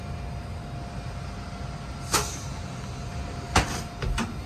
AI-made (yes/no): no